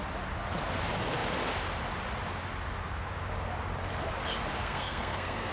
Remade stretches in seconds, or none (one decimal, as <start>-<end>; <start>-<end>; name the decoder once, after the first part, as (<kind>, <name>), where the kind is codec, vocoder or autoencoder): 4.6-5.5 (codec, SNAC)